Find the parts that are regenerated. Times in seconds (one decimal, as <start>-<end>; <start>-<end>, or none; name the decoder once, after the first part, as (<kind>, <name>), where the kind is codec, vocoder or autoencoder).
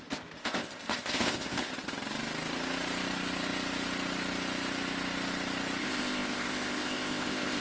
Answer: 0.4-1.7 (codec, ZipCodec); 5.8-7.6